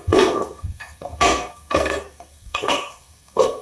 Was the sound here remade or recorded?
remade